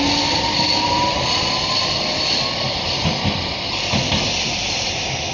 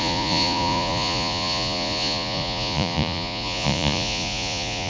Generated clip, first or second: second